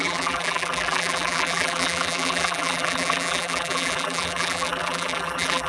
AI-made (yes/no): yes